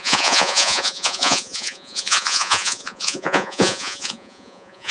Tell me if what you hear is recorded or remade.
remade